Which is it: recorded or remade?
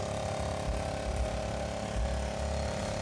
recorded